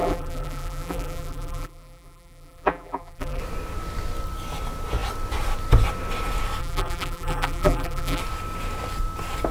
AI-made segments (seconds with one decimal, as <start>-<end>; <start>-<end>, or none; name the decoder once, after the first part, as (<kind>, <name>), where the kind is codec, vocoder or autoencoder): 0.0-3.4 (vocoder, BigVGAN v2); 6.6-8.2